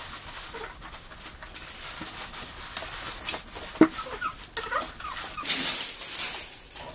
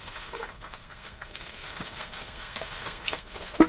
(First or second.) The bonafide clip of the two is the first